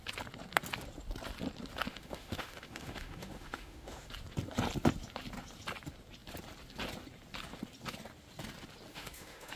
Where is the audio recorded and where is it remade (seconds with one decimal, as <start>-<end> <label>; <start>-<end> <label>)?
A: 0.0-1.9 recorded; 1.9-4.1 remade; 4.1-8.9 recorded; 8.9-9.6 remade